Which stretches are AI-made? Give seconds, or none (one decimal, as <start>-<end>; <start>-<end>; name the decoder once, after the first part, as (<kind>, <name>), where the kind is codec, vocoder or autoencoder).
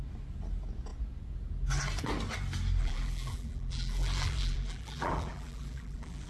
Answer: 2.8-6.3 (vocoder, BigVGAN v2)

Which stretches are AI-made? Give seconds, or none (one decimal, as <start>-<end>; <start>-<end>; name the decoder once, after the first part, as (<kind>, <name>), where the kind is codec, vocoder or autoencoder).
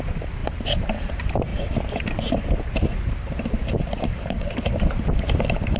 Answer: 0.0-1.5 (vocoder, BigVGAN v2); 4.0-5.8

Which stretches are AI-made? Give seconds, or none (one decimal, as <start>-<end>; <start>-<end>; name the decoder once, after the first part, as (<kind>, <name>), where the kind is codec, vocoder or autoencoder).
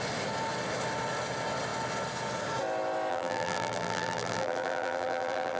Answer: 3.1-5.6 (vocoder, BigVGAN v2)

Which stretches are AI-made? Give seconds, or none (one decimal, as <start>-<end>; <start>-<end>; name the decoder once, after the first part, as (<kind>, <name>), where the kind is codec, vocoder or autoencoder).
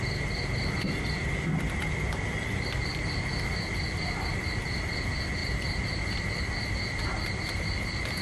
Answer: 0.0-8.2 (vocoder, BigVGAN v2)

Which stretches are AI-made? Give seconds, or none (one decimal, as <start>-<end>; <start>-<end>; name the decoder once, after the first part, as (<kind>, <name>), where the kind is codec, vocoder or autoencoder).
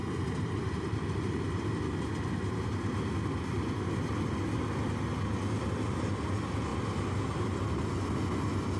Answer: none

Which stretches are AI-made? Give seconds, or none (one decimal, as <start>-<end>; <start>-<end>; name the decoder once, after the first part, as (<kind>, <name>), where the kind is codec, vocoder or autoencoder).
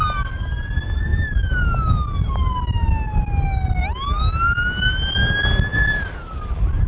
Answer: 5.7-6.9 (vocoder, BigVGAN v2)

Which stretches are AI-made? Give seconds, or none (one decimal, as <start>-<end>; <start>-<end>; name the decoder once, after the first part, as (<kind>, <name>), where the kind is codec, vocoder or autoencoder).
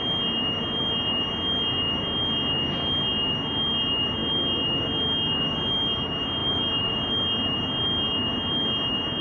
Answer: 6.4-7.1 (vocoder, BigVGAN v2)